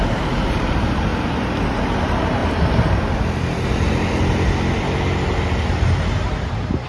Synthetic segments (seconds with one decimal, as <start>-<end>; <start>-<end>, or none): 0.0-1.1; 1.8-2.4; 6.0-6.9

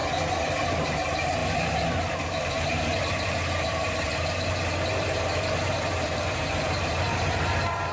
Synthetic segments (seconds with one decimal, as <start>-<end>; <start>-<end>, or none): 0.6-7.9

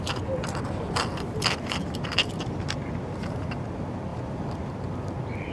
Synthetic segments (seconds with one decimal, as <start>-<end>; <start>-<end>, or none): 1.8-2.8; 4.1-4.7

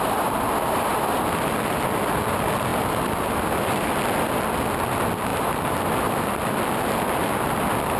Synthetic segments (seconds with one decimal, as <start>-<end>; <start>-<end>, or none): 0.0-0.9; 2.0-2.7; 3.6-8.0